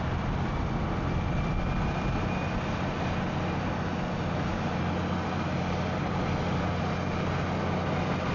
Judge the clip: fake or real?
real